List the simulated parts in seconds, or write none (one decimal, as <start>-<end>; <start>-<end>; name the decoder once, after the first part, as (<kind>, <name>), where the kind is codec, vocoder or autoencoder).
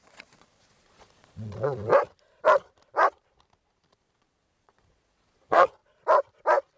0.0-1.9 (vocoder, Vocos); 4.2-5.8